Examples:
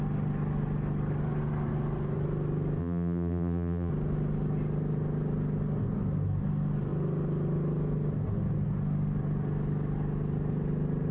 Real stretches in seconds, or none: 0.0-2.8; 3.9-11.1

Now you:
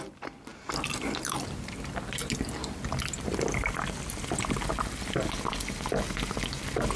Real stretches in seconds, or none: 0.0-7.0

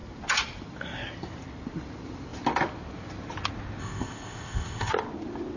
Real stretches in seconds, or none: 0.0-3.8; 4.9-5.6

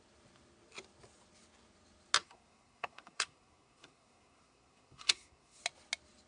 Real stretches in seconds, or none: 0.0-2.2; 5.6-6.3

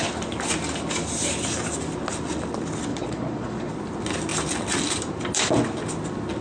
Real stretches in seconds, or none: 0.0-2.9; 3.7-6.4

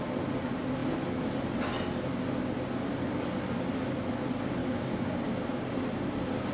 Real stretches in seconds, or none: 0.0-4.6; 5.3-6.5

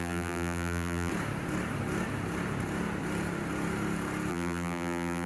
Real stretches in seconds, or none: 1.1-4.3

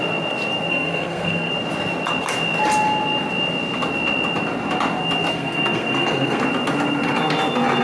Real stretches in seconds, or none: 0.0-0.7; 1.5-5.3; 6.4-7.8